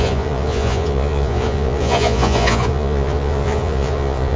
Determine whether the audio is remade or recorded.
remade